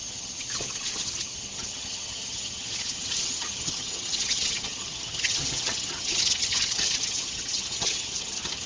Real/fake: fake